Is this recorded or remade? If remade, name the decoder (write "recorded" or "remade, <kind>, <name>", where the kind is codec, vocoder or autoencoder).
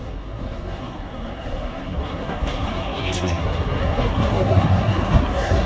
remade, codec, SNAC